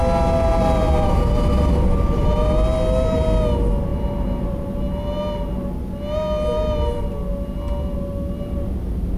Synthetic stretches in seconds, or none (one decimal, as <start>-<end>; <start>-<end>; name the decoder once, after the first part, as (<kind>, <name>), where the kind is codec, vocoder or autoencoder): none